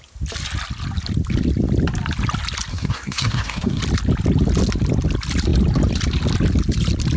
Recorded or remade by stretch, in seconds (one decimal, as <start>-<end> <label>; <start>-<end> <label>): 0.0-2.7 recorded; 2.7-3.8 remade; 3.8-7.2 recorded